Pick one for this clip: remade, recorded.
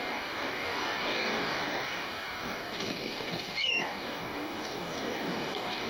remade